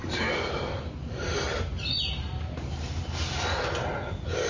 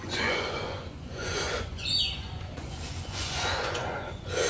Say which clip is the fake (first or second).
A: second